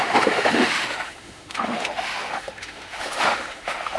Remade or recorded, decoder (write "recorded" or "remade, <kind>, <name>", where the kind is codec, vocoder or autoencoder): remade, autoencoder, DAC-VAE